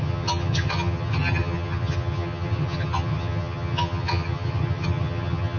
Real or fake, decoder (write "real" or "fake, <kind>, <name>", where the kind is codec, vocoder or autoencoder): fake, vocoder, HiFi-GAN